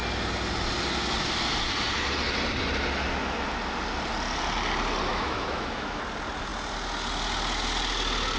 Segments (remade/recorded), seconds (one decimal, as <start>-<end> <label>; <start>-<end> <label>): 0.0-5.1 recorded; 5.1-6.0 remade; 6.0-8.4 recorded